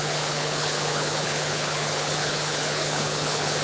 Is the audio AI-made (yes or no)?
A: yes